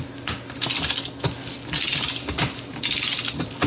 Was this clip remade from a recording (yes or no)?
no